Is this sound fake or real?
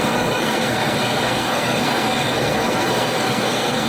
fake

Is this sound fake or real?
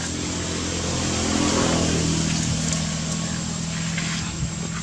real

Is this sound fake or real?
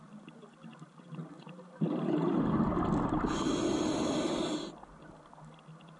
real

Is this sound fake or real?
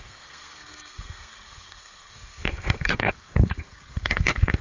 fake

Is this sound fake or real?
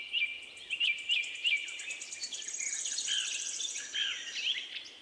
real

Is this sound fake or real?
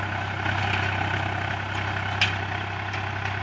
real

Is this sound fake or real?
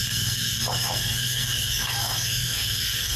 fake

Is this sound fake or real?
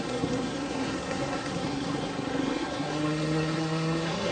fake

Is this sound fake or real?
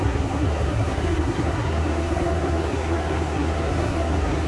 fake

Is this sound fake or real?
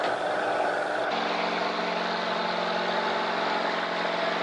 real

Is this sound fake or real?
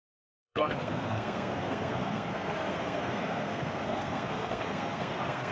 fake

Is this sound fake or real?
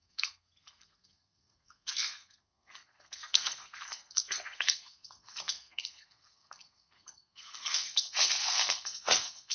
fake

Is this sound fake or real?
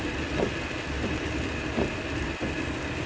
real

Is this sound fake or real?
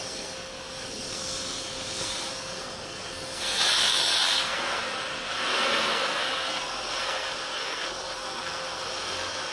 fake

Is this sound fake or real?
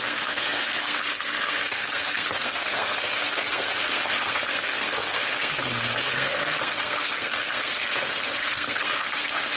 fake